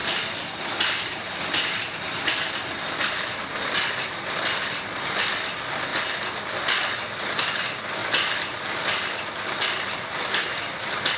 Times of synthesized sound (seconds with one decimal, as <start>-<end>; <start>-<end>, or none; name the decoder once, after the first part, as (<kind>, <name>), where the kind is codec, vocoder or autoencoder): 0.0-5.9 (vocoder, BigVGAN v2); 7.1-11.2